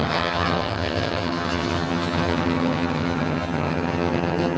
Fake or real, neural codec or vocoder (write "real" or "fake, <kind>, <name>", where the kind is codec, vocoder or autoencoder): fake, vocoder, HiFi-GAN